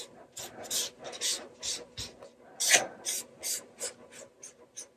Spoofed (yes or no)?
no